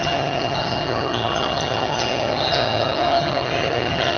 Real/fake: fake